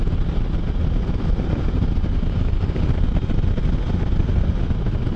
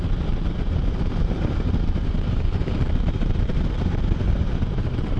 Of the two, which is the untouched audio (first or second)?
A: first